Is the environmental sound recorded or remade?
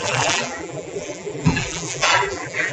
remade